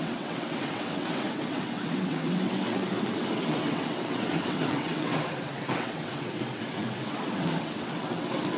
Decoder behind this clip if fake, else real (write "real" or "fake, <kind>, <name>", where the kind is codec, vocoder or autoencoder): fake, vocoder, WaveNeXt